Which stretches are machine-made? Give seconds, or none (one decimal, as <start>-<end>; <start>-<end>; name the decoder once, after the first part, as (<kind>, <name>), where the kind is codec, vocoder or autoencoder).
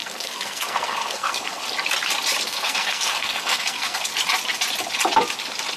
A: 0.0-1.6 (codec, SNAC); 2.4-4.1